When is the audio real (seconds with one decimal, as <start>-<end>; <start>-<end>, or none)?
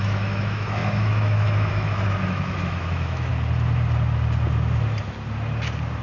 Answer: 3.3-6.0